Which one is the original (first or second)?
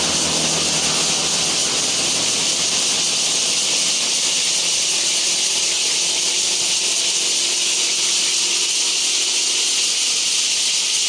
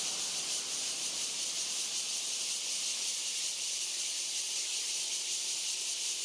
first